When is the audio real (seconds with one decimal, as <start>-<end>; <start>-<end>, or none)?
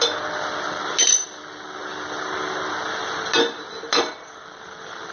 0.0-5.1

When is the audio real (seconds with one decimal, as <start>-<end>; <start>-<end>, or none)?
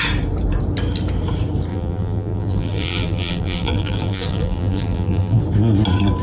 0.0-1.7; 5.4-6.2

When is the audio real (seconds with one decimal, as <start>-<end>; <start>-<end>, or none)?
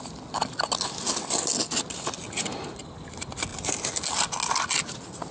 0.0-5.3